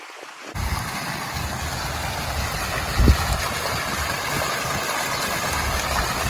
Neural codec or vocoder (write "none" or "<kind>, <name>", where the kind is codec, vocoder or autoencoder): none